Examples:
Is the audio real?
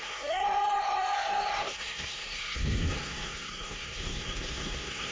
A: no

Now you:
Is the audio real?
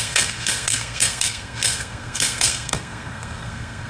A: no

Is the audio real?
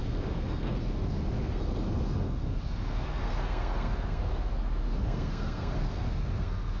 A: no